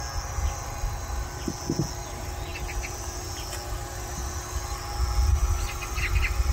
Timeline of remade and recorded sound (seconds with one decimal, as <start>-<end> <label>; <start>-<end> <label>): 0.0-6.5 recorded